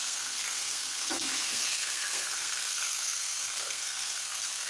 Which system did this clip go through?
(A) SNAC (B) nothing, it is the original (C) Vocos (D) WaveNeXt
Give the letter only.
A